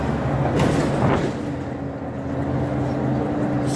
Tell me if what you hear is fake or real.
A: real